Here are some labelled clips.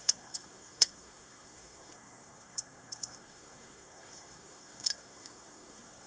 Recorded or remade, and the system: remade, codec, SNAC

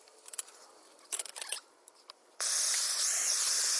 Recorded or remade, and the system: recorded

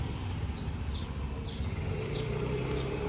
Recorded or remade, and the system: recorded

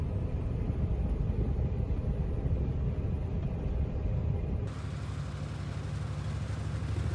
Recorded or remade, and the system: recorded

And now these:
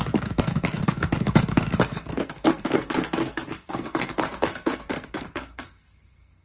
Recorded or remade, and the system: remade, codec, SNAC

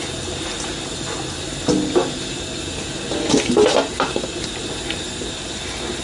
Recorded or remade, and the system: recorded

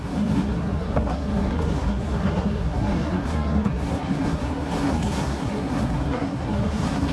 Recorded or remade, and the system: remade, codec, SNAC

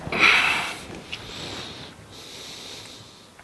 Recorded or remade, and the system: recorded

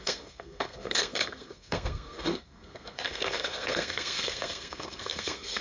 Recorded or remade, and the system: remade, codec, SNAC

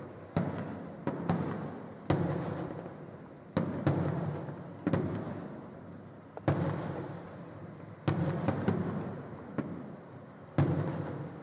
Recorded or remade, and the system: recorded